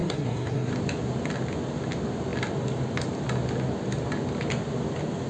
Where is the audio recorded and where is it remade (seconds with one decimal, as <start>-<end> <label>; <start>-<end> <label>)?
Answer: 0.0-0.7 remade; 0.7-5.3 recorded